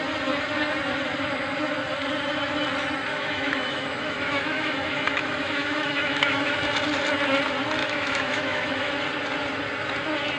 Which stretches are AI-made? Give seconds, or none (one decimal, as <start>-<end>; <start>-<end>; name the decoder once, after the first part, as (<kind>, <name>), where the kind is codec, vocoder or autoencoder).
3.1-6.6 (autoencoder, DAC-VAE); 7.8-8.9